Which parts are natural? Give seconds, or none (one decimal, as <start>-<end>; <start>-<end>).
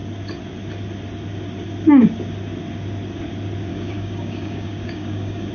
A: 0.0-3.7